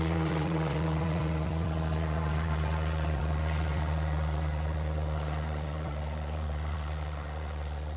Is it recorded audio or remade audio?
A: remade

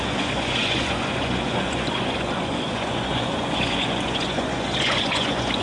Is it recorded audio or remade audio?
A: remade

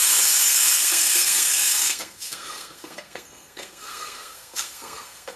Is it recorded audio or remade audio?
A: remade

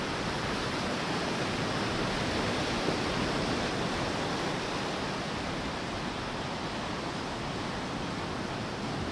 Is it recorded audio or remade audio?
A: recorded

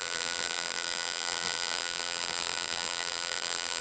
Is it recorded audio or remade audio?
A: remade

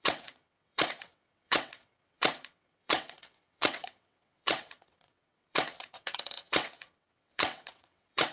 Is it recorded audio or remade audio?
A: remade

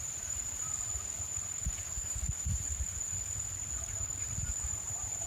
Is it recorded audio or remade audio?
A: remade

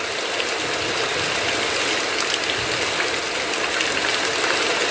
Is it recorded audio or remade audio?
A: recorded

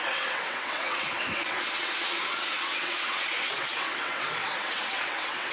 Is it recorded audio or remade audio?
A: remade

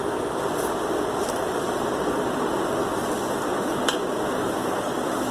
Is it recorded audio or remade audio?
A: recorded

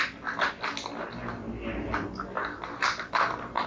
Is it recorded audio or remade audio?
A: recorded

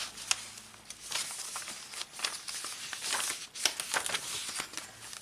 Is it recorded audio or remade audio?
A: recorded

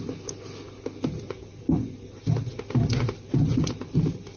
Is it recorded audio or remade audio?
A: recorded